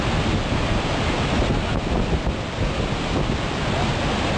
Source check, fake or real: real